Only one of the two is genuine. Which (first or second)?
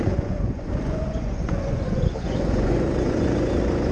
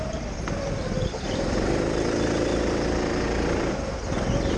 second